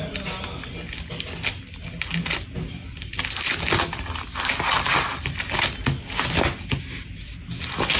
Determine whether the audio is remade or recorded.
recorded